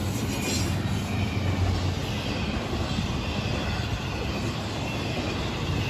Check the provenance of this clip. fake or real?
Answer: real